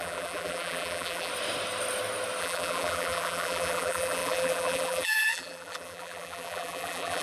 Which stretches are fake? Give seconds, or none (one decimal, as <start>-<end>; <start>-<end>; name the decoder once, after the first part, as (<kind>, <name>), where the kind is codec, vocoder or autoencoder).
0.0-1.3 (vocoder, BigVGAN v2); 2.4-7.2